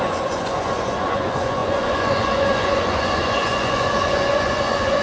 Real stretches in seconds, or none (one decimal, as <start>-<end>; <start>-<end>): none